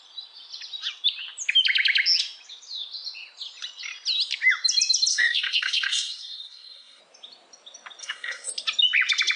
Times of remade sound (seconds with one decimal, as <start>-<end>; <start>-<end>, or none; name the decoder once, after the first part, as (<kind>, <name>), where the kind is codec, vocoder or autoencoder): 5.1-7.0 (codec, SNAC); 8.0-8.5